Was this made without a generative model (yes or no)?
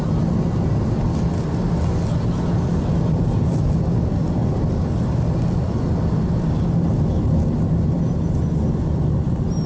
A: yes